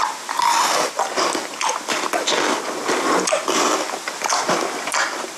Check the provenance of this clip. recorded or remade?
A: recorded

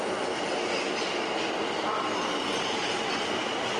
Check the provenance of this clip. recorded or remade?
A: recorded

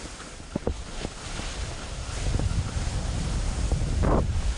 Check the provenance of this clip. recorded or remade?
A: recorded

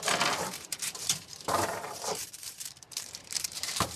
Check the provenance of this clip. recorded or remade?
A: remade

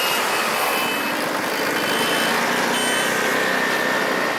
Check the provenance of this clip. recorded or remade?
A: recorded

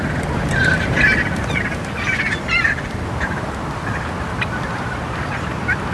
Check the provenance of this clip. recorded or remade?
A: recorded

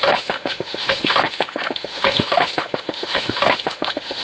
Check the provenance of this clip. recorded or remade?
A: remade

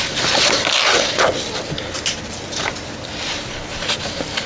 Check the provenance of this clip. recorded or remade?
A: recorded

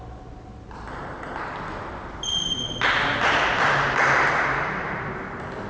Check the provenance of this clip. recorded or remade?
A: recorded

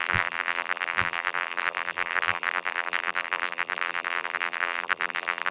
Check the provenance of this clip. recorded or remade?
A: remade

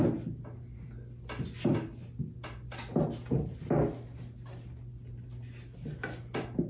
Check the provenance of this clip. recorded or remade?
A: recorded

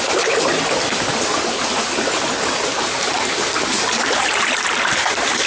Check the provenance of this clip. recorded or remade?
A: recorded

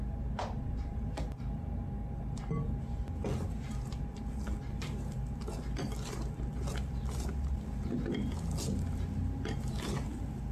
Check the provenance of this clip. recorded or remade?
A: recorded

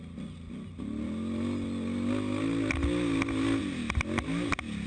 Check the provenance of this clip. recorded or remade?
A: recorded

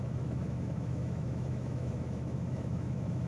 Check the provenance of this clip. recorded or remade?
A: remade